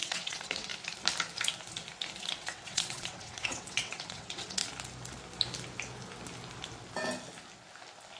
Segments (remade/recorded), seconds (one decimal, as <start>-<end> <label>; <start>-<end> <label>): 0.0-0.7 remade; 0.7-2.2 recorded; 2.2-4.6 remade; 4.6-8.2 recorded